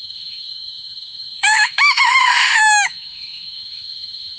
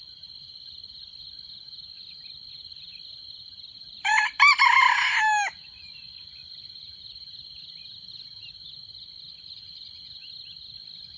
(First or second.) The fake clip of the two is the first